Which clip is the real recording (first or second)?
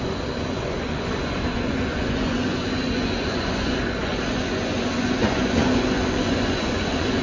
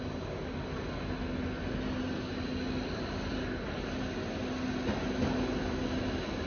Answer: second